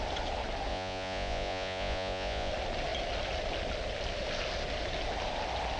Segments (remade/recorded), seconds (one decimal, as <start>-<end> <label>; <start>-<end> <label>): 0.0-0.7 recorded; 0.7-2.5 remade; 2.5-5.8 recorded